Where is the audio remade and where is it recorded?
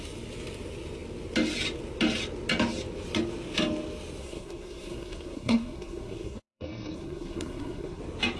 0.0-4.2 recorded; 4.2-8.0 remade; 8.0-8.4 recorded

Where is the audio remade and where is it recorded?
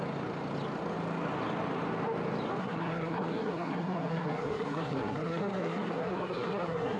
0.0-2.6 recorded; 2.6-7.0 remade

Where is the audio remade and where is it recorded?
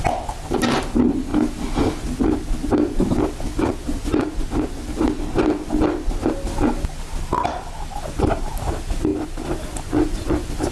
0.0-10.7 recorded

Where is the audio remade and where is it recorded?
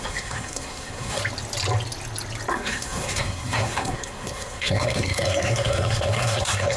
0.0-1.2 remade; 1.2-2.5 recorded; 2.5-6.8 remade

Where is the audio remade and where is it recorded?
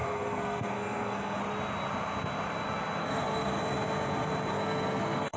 0.0-1.4 remade; 1.4-3.0 recorded; 3.0-3.6 remade; 3.6-4.5 recorded; 4.5-5.4 remade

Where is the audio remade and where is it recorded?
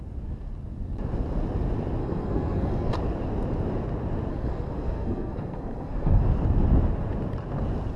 0.0-2.0 recorded; 2.0-2.9 remade; 2.9-4.3 recorded; 4.3-6.2 remade; 6.2-8.0 recorded